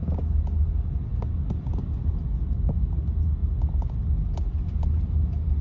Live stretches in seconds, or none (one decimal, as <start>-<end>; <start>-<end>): 0.0-5.6

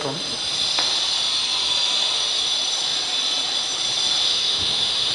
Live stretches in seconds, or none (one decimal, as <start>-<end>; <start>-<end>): 0.0-4.3

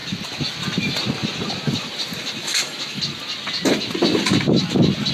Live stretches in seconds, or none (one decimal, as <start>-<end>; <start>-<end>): 0.0-2.5; 3.0-5.1

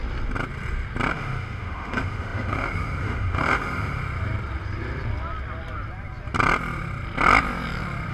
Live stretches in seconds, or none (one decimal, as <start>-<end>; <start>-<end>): 0.0-1.1; 4.0-8.1

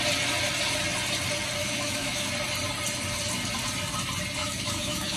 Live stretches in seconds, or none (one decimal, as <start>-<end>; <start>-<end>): 0.0-1.6; 2.3-4.4

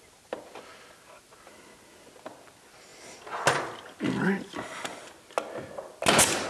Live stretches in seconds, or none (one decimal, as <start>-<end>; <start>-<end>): 0.0-6.5